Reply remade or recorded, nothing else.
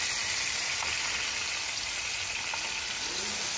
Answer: recorded